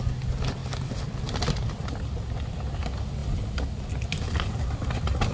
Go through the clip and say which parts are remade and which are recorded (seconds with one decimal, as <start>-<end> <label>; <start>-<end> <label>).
0.0-5.3 recorded